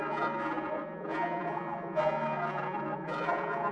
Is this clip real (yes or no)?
no